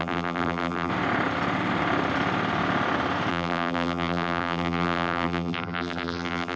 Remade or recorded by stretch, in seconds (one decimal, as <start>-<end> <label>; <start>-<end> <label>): 0.0-0.9 remade; 0.9-3.3 recorded; 3.3-6.6 remade